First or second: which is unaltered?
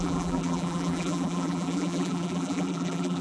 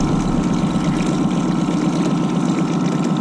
second